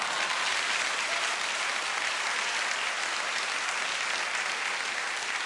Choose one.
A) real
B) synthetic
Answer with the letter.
A